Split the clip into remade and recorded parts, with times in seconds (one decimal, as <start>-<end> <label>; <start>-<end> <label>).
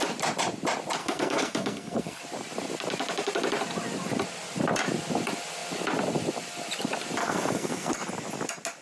0.0-1.0 recorded; 1.0-2.2 remade; 2.2-7.2 recorded; 7.2-7.9 remade; 7.9-8.8 recorded